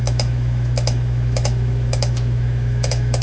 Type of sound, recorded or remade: remade